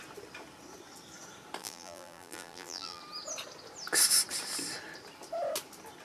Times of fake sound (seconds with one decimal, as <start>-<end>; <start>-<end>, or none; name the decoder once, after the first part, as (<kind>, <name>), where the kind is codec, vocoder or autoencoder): 1.6-3.0 (vocoder, BigVGAN v2)